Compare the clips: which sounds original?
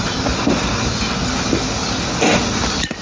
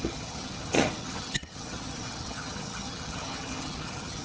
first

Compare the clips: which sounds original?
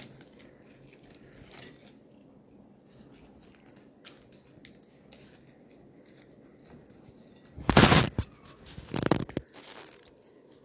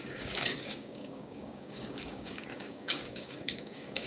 first